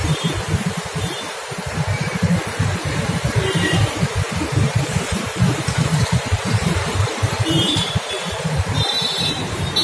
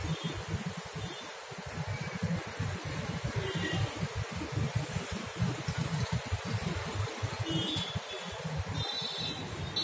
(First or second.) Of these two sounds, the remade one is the first